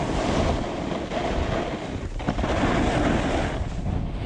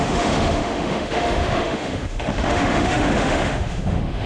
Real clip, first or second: first